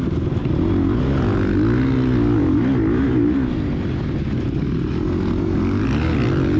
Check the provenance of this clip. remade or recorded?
recorded